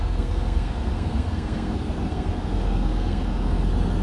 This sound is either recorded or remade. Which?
remade